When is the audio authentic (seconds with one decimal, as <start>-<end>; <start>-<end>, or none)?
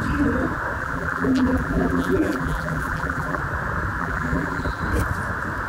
0.0-0.8; 3.4-4.0; 4.8-5.7